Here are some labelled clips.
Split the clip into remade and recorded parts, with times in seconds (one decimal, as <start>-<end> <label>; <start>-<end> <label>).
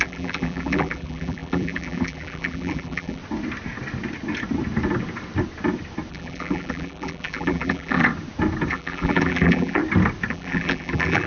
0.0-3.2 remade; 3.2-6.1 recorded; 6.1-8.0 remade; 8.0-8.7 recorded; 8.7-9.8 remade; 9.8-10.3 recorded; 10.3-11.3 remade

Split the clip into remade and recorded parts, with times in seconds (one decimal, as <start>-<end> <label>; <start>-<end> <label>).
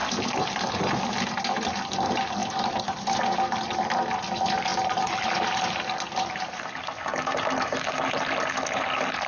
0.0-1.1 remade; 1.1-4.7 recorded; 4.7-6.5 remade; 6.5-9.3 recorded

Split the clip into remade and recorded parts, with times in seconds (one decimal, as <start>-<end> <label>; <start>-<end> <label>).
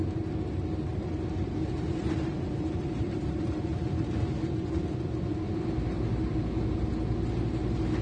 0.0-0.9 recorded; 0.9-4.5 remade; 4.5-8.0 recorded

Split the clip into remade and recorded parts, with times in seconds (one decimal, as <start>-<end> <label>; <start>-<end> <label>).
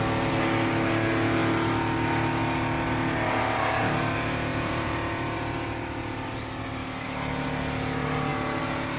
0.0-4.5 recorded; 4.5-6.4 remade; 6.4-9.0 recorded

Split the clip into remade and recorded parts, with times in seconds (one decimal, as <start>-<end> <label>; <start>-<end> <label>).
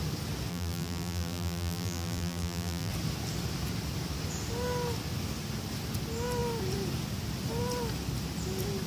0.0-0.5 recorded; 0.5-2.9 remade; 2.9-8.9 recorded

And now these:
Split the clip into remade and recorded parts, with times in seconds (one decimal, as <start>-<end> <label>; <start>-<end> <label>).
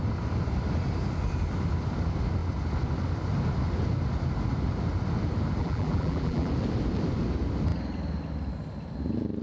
0.0-5.6 recorded; 5.6-6.5 remade; 6.5-9.4 recorded